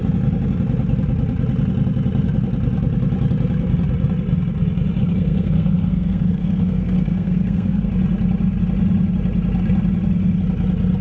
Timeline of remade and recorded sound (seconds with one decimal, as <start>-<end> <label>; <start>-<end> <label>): 0.0-5.0 recorded; 5.0-7.9 remade; 7.9-11.0 recorded